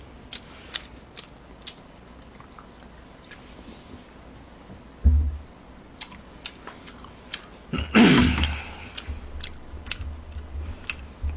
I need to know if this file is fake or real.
real